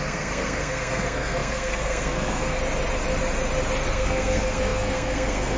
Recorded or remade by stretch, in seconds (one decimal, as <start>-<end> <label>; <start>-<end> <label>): 0.0-2.6 remade; 2.6-3.9 recorded; 3.9-5.6 remade